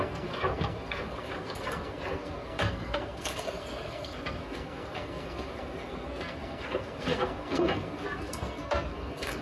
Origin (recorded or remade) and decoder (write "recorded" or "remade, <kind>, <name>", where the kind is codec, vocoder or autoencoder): remade, codec, SNAC